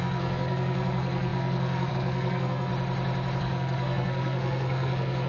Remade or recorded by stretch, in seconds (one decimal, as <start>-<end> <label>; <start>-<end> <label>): 0.0-2.7 remade; 2.7-3.4 recorded; 3.4-5.3 remade